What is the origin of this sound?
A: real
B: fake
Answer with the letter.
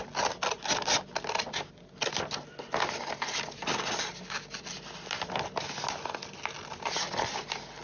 A